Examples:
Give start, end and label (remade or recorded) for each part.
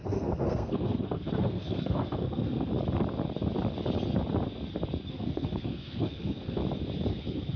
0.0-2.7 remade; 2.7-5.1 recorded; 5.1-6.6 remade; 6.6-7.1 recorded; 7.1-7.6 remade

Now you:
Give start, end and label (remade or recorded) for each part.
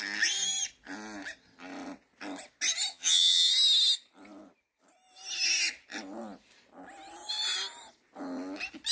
0.0-2.9 recorded; 2.9-3.5 remade; 3.5-8.9 recorded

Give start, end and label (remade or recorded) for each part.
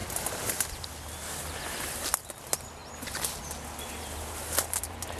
0.0-5.2 recorded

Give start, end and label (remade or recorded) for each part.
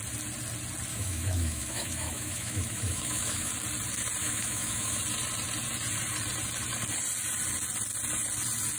0.0-0.9 recorded; 0.9-3.5 remade; 3.5-4.2 recorded; 4.2-5.0 remade; 5.0-8.8 recorded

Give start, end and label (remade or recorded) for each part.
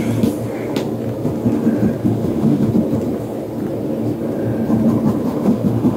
0.0-2.0 recorded; 2.0-2.7 remade; 2.7-5.3 recorded; 5.3-6.0 remade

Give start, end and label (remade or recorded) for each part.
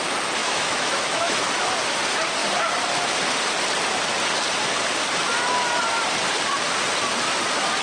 0.0-0.4 recorded; 0.4-1.4 remade; 1.4-7.8 recorded